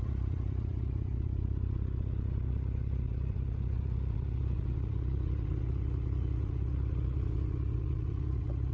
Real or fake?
fake